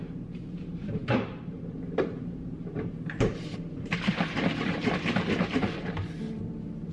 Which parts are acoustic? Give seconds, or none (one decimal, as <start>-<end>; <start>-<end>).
none